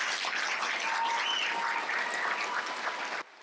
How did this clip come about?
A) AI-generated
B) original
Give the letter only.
B